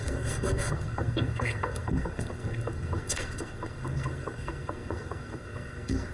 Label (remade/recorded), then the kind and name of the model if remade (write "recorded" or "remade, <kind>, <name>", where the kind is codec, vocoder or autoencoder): remade, codec, SNAC